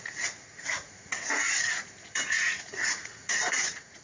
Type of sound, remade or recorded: remade